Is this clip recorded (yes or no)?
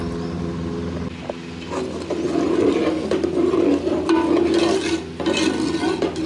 yes